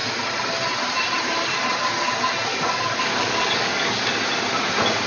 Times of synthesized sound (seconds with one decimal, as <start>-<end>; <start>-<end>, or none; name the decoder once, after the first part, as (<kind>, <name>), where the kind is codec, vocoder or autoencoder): 2.5-4.1 (codec, DAC)